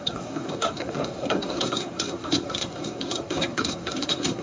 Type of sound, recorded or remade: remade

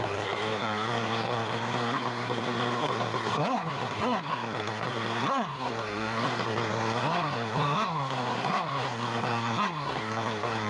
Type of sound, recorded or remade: remade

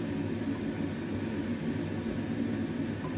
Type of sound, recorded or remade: recorded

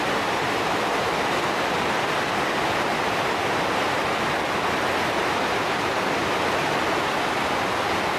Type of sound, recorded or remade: remade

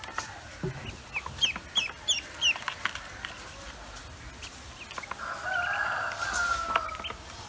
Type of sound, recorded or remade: recorded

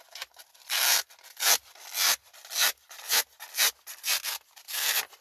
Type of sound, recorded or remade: recorded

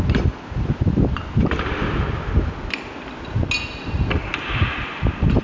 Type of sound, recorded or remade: recorded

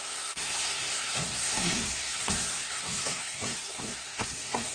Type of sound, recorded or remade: remade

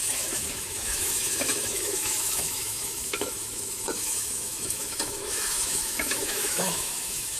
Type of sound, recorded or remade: remade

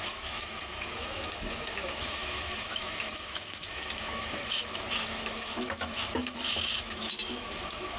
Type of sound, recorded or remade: remade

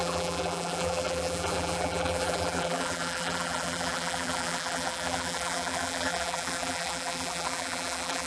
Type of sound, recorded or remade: remade